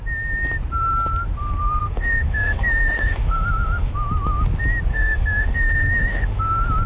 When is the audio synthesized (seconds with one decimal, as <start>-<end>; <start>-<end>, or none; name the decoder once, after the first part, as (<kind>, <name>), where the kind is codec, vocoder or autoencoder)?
1.8-3.9 (autoencoder, DAC-VAE); 4.9-6.4